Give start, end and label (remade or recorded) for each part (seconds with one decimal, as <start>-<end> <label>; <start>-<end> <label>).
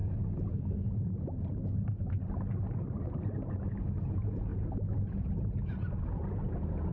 0.0-4.1 recorded; 4.1-6.9 remade